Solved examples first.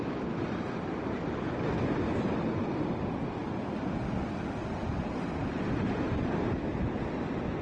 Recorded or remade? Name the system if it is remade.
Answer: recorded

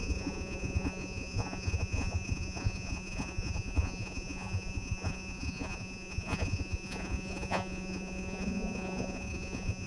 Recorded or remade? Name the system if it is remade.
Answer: remade, vocoder, Vocos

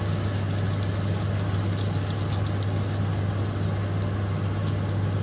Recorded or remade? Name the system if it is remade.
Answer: recorded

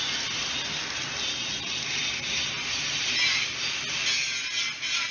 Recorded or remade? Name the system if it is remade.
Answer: recorded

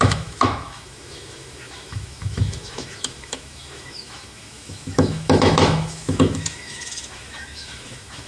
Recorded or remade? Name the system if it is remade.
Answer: remade, autoencoder, DAC-VAE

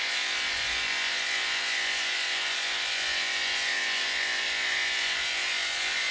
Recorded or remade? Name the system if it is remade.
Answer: remade, vocoder, Vocos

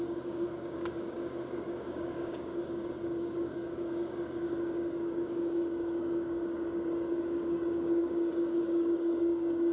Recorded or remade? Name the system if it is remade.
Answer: remade, codec, DAC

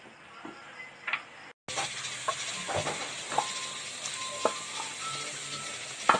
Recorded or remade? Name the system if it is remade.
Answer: recorded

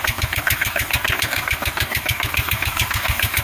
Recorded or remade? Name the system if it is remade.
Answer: remade, codec, DAC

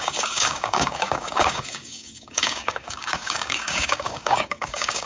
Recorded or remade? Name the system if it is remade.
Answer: remade, codec, DAC